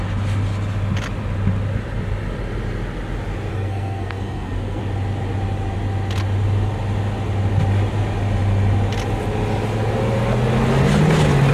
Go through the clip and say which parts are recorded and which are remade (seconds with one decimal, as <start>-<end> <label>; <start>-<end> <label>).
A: 0.0-3.5 recorded; 3.5-4.8 remade; 4.8-11.5 recorded